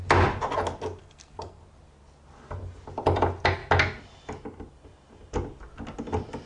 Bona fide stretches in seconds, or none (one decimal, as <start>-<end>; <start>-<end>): 0.0-1.0; 1.6-6.5